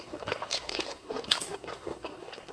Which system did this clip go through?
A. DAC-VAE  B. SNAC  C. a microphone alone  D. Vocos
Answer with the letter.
B